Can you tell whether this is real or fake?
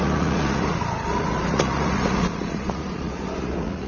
fake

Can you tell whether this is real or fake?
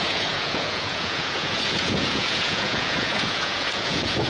fake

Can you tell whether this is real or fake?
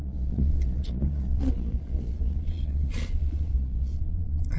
fake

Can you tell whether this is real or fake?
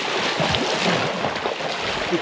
real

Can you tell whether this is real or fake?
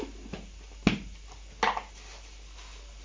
real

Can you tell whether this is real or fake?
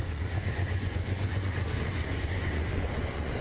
fake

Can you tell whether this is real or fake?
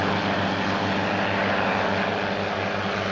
real